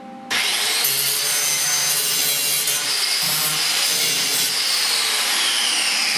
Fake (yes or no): no